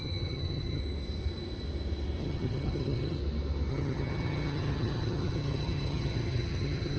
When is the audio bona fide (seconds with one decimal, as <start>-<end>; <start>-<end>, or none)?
0.8-2.2; 3.2-3.7